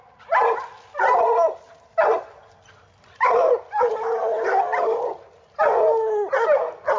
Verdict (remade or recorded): recorded